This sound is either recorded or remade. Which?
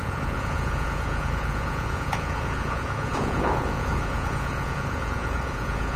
remade